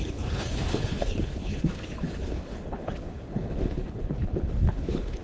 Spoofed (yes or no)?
yes